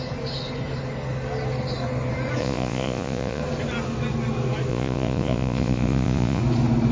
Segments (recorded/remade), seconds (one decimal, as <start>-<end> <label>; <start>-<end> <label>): 0.0-2.4 recorded; 2.4-3.4 remade; 3.4-4.7 recorded; 4.7-6.4 remade; 6.4-6.9 recorded